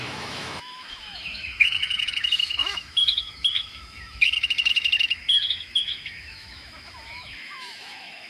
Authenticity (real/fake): fake